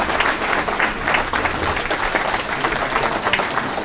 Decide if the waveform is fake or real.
real